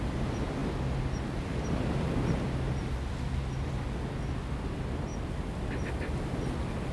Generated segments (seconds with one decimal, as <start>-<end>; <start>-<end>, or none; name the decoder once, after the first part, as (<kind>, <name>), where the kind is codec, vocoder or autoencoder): none